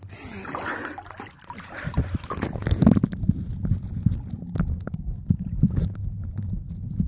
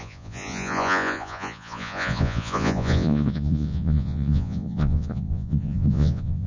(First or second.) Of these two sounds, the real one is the first